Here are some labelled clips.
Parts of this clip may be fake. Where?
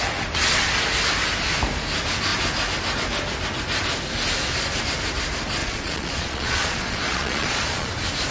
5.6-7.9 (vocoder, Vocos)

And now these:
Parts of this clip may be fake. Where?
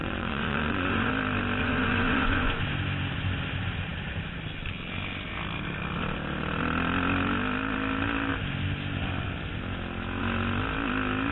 0.0-1.1 (vocoder, Vocos); 1.6-2.6